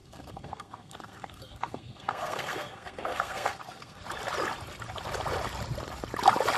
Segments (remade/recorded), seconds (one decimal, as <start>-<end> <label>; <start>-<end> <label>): 0.0-4.0 remade; 4.0-6.6 recorded